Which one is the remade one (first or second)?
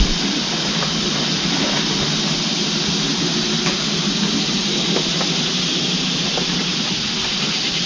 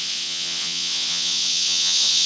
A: second